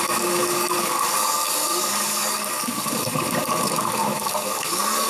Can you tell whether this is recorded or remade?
remade